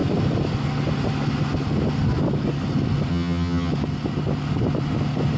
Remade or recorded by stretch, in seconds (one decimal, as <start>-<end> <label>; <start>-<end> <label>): 0.0-3.1 recorded; 3.1-3.7 remade; 3.7-5.4 recorded